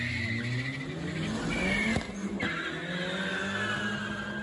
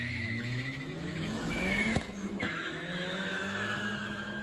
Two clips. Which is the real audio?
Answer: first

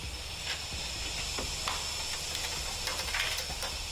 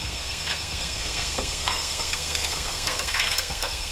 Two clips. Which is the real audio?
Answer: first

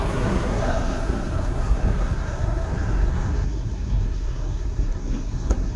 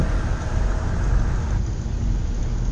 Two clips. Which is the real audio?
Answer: second